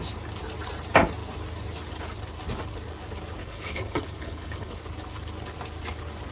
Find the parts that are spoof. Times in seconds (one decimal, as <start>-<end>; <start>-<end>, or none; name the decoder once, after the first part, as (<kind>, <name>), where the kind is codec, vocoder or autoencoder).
3.4-4.8 (codec, HILCodec)